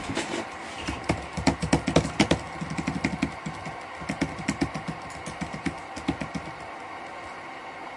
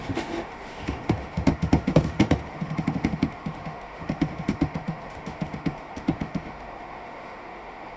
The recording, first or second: first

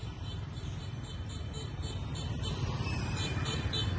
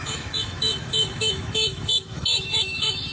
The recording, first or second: first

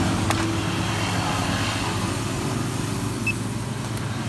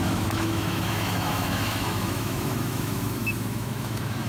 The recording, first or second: first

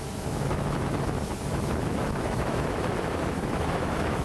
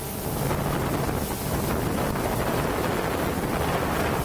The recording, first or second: second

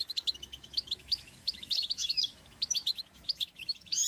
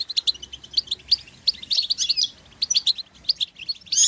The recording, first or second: second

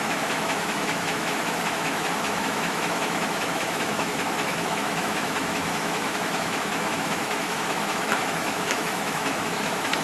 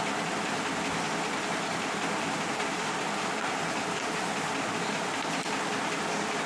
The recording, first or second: second